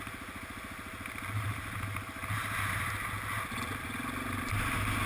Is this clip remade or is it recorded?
recorded